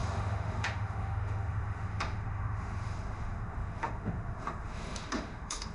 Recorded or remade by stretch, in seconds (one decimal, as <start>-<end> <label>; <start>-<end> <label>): 0.0-5.7 remade